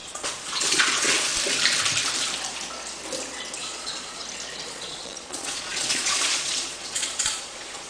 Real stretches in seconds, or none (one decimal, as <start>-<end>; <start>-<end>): 1.3-3.6; 4.2-4.7